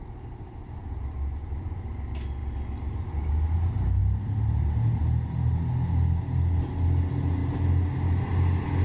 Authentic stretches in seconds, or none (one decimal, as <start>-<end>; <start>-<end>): 0.0-8.8